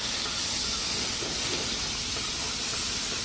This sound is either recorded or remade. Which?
recorded